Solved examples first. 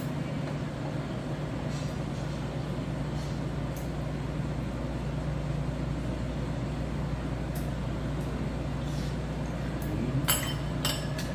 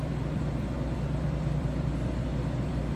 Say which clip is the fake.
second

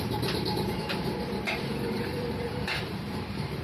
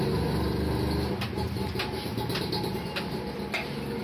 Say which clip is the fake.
first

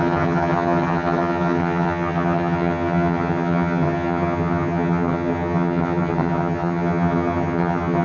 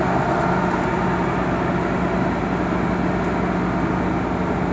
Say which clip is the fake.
first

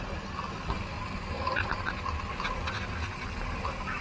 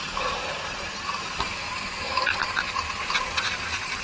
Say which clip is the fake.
second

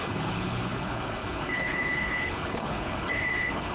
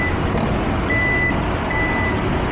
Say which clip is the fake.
first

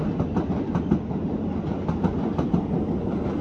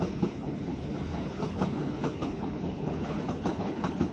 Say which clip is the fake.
second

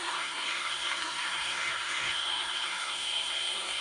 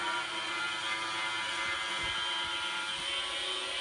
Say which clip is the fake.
first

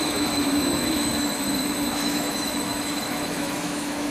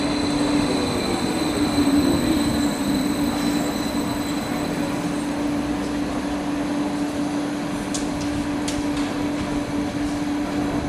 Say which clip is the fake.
first